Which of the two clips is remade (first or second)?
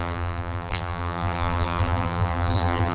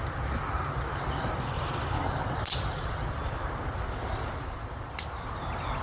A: first